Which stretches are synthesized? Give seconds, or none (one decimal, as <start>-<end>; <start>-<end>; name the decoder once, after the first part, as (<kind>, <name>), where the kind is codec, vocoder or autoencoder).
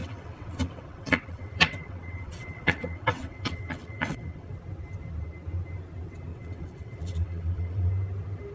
0.0-4.5 (vocoder, WaveNeXt); 6.3-7.9